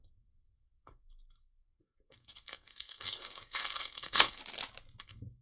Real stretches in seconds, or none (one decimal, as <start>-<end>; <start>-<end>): 4.4-5.0